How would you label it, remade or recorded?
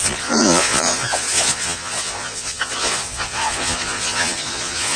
remade